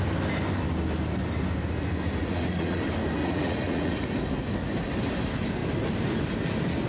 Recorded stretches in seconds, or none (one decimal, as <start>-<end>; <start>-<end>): 0.0-2.2; 2.8-3.2; 4.2-6.9